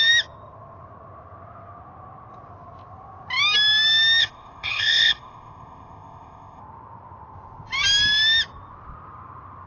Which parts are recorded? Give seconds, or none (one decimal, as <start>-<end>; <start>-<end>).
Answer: 0.0-4.2; 6.6-9.7